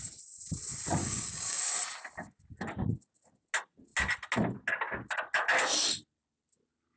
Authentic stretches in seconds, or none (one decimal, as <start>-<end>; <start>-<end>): 0.0-1.0; 1.6-7.0